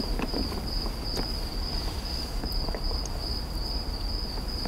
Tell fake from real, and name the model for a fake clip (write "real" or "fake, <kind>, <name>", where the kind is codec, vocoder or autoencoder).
real